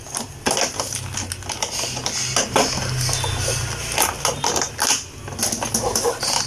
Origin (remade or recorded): recorded